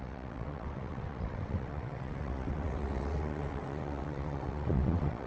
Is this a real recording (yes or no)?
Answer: no